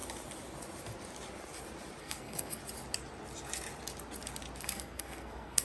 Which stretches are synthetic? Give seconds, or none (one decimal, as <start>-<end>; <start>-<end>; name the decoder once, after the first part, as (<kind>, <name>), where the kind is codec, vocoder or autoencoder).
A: 2.0-2.6 (codec, SNAC); 4.6-5.6